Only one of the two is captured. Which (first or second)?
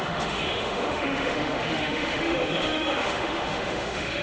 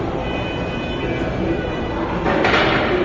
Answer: second